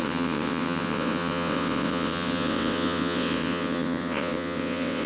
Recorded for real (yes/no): no